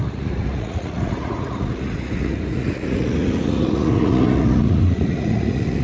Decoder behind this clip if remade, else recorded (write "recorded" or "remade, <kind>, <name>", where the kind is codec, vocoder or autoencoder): remade, vocoder, Vocos